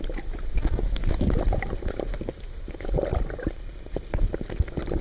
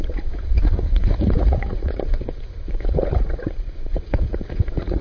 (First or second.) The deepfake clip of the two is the second